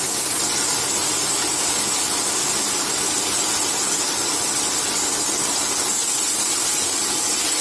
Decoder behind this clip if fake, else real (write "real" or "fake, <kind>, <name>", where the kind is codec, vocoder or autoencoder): real